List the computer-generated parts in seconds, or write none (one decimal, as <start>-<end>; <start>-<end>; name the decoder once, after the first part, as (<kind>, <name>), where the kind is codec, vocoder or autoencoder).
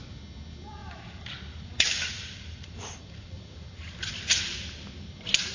0.8-4.1 (vocoder, BigVGAN v2)